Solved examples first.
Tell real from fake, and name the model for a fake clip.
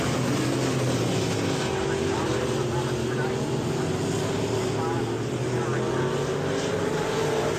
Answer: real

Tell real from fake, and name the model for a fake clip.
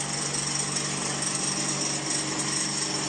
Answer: real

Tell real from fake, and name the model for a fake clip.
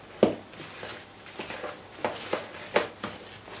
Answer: real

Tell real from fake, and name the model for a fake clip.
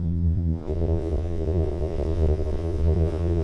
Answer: fake, vocoder, Vocos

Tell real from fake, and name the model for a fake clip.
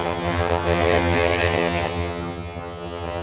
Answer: fake, vocoder, HiFi-GAN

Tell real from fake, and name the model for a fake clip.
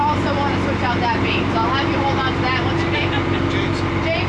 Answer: real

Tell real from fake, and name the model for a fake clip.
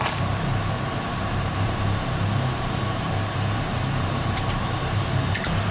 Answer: fake, vocoder, BigVGAN v2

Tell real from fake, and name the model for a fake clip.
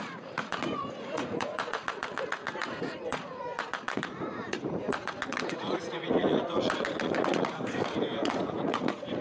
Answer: fake, vocoder, Vocos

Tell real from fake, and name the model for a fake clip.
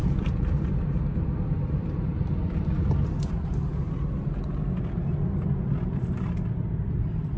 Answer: real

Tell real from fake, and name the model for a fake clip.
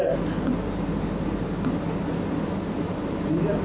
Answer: real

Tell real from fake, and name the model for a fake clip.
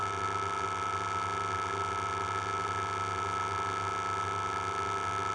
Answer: fake, vocoder, BigVGAN v2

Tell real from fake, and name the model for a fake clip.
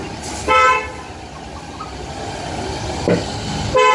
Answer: real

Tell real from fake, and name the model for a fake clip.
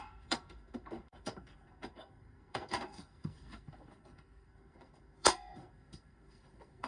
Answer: fake, codec, SNAC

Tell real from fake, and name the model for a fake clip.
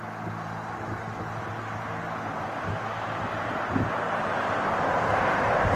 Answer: real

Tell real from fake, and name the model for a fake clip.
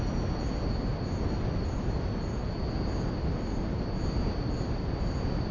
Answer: real